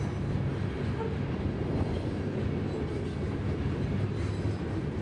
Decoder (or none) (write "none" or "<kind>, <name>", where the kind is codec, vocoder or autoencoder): none